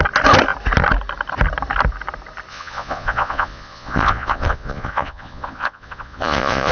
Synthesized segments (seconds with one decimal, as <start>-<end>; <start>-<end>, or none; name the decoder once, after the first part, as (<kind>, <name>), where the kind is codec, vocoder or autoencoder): 2.5-6.7 (vocoder, Vocos)